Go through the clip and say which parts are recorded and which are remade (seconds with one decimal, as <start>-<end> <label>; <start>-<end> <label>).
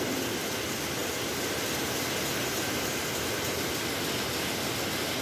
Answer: 0.0-5.2 recorded